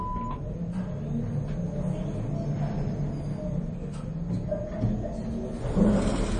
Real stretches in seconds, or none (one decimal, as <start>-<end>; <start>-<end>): 0.0-6.4